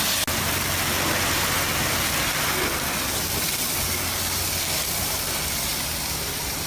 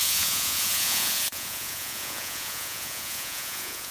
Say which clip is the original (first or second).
first